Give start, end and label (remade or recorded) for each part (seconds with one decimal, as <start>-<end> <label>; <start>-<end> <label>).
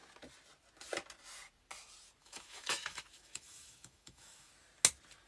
0.0-2.2 recorded; 2.2-4.5 remade; 4.5-5.3 recorded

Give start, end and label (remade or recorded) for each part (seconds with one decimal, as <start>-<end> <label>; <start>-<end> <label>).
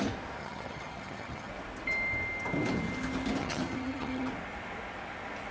0.0-0.4 recorded; 0.4-1.5 remade; 1.5-3.4 recorded; 3.4-4.3 remade; 4.3-5.5 recorded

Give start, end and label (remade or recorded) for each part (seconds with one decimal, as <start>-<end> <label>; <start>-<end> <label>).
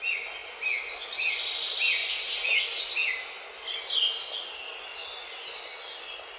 0.0-2.0 recorded; 2.0-2.6 remade; 2.6-6.4 recorded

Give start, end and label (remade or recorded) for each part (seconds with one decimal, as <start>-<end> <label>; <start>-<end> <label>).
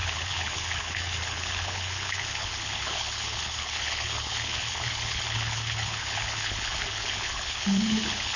0.0-8.4 remade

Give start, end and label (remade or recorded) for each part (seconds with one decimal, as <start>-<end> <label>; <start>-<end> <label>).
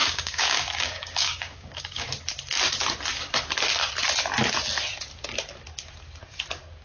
0.0-2.1 remade; 2.1-6.8 recorded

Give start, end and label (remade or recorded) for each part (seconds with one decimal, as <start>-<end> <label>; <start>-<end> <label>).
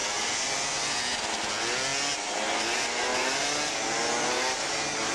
0.0-5.1 recorded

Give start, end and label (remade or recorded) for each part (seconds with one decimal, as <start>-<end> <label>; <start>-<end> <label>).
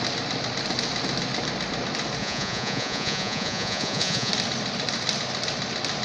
0.0-2.2 recorded; 2.2-4.3 remade; 4.3-6.0 recorded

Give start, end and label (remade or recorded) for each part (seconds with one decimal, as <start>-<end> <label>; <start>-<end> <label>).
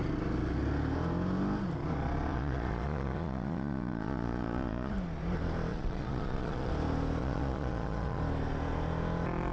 0.0-2.3 recorded; 2.3-4.9 remade; 4.9-5.7 recorded; 5.7-6.7 remade; 6.7-7.2 recorded; 7.2-8.2 remade; 8.2-9.5 recorded